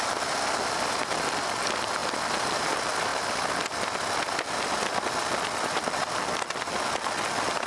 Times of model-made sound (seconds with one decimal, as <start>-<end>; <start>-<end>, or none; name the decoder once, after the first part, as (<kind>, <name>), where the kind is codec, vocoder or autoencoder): none